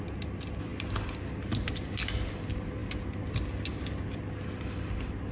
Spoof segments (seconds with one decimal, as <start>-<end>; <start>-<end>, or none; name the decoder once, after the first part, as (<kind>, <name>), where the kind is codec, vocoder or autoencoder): none